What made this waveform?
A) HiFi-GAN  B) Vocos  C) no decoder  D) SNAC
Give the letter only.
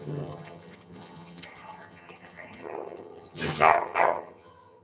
A